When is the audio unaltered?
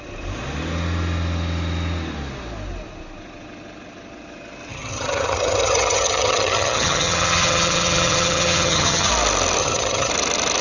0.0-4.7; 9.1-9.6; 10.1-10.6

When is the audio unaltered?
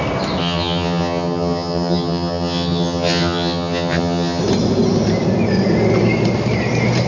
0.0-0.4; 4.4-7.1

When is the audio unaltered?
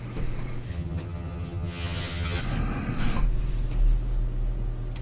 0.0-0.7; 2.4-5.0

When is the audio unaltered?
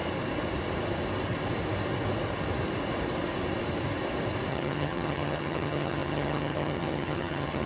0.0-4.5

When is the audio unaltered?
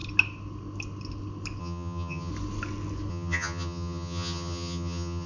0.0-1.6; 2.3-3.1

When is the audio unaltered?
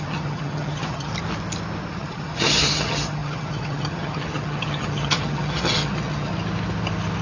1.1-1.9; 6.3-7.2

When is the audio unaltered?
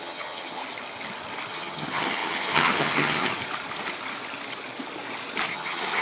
0.6-1.5; 3.3-5.5